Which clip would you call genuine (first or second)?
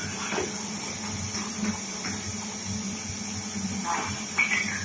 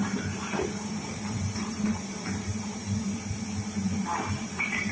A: first